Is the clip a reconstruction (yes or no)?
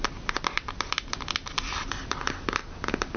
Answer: no